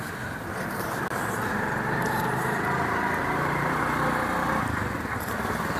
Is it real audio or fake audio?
real